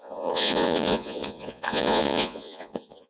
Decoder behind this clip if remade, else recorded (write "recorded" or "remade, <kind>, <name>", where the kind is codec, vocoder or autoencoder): remade, vocoder, Vocos